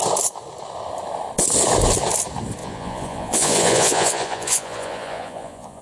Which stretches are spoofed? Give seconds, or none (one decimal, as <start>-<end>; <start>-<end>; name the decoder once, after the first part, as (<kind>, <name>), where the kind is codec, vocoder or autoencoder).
2.6-5.8 (vocoder, Vocos)